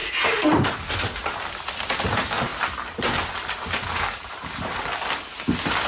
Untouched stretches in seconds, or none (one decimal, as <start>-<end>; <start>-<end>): 0.0-5.9